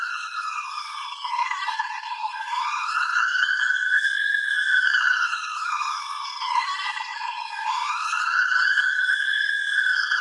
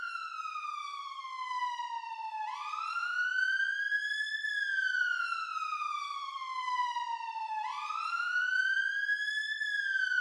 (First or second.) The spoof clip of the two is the first